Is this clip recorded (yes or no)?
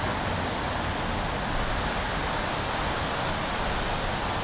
yes